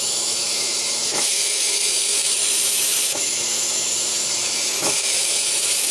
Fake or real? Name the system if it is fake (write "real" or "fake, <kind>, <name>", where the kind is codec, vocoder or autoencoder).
fake, autoencoder, DAC-VAE